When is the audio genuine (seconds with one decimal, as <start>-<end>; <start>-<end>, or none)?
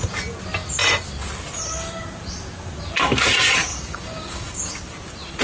0.0-3.7; 4.6-5.4